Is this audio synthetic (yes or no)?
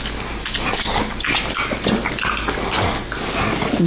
no